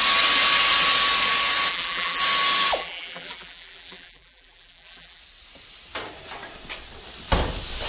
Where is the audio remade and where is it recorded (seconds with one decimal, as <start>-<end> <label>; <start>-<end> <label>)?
0.0-1.7 recorded; 1.7-2.2 remade; 2.2-2.8 recorded; 2.8-5.2 remade; 5.2-7.9 recorded